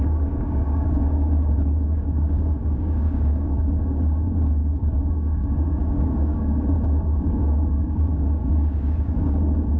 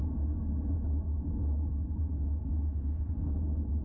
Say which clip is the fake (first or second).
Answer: first